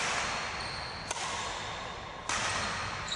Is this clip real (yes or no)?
yes